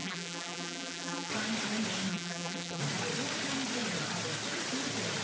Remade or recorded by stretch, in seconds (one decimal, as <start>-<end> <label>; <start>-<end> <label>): 0.0-1.3 remade; 1.3-2.1 recorded; 2.1-2.8 remade; 2.8-5.2 recorded